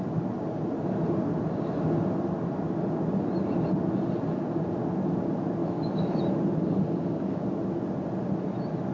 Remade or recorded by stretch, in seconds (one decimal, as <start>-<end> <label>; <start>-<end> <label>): 0.0-5.6 recorded; 5.6-6.2 remade; 6.2-8.9 recorded